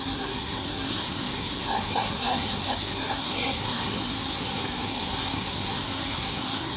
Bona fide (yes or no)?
no